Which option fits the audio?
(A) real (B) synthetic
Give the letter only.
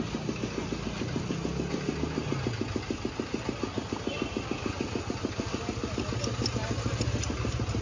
A